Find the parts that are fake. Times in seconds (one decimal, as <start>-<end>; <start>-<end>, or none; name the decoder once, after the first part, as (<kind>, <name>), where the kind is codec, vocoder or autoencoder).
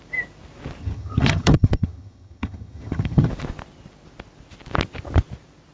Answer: 0.8-3.3 (vocoder, HiFi-GAN)